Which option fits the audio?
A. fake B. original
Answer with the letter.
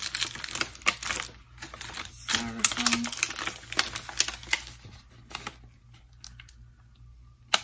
B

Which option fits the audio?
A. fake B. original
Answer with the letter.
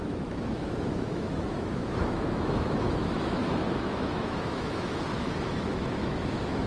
A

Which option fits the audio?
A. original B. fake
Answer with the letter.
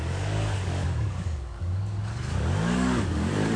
B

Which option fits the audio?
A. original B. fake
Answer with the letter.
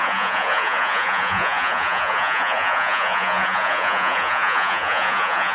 B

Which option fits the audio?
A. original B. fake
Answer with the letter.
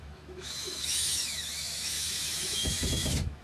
B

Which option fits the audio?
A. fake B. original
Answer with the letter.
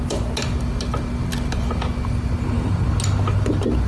B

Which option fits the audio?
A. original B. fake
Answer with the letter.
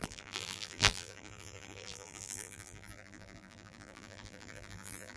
B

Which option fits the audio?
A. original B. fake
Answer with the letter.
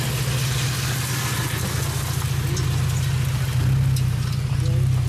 A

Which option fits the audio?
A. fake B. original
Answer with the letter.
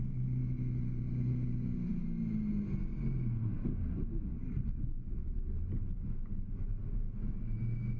B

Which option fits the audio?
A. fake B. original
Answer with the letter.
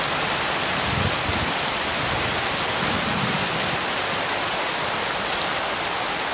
B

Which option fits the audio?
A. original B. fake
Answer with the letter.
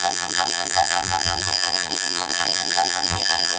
B